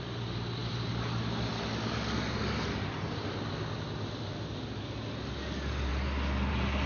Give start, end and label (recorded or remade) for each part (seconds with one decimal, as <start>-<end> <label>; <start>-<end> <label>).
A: 0.0-6.9 recorded